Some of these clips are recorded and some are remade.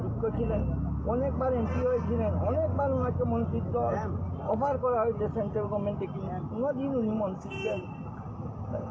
recorded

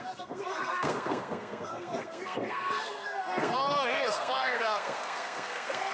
remade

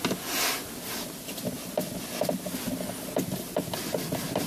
recorded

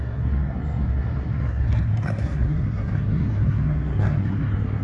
remade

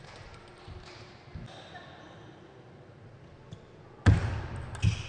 recorded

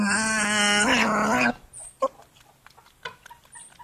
recorded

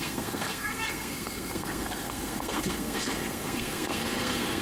remade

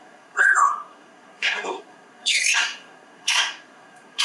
remade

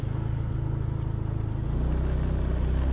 recorded